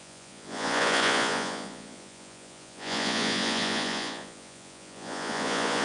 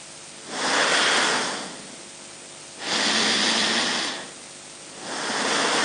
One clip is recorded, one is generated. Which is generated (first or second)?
first